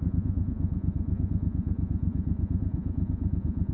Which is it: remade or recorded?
remade